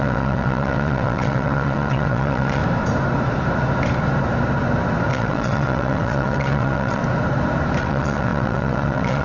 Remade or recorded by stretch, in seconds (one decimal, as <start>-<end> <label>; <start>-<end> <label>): 0.0-2.6 remade; 2.6-5.1 recorded; 5.1-7.0 remade; 7.0-7.8 recorded; 7.8-9.2 remade